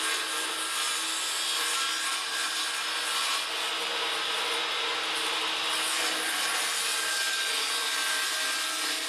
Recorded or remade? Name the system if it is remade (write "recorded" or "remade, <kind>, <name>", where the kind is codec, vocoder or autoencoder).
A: recorded